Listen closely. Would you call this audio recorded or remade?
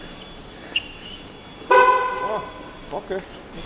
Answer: recorded